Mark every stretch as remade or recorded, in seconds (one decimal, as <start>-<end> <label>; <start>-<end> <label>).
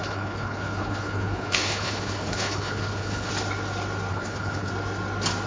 0.0-3.3 remade; 3.3-4.1 recorded; 4.1-4.7 remade; 4.7-5.5 recorded